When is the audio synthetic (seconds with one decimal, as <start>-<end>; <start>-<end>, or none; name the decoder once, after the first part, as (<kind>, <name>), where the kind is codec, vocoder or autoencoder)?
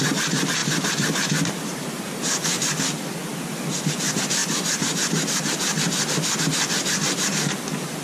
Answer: 0.0-8.0 (vocoder, BigVGAN v2)